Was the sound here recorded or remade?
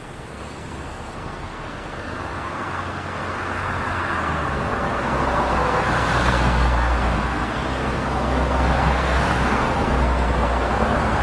remade